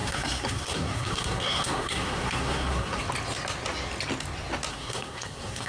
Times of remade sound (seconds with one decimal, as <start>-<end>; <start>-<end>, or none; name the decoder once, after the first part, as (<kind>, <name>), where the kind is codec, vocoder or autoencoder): 0.0-3.0 (codec, SNAC); 4.7-5.7